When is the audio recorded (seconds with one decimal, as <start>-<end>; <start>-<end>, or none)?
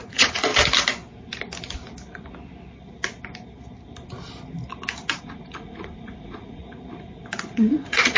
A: 0.5-5.2; 6.6-7.5